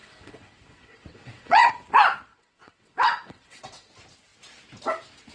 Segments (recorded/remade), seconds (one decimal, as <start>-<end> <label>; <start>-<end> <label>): 0.0-1.7 remade; 1.7-2.3 recorded; 2.3-3.9 remade; 3.9-5.3 recorded